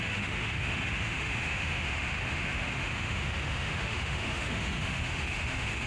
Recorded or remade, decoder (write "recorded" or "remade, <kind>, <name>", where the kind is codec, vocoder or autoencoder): remade, autoencoder, DAC-VAE